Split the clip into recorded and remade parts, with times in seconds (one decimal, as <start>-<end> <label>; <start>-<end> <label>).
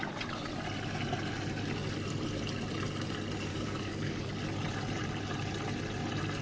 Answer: 0.0-3.5 recorded; 3.5-4.3 remade; 4.3-6.4 recorded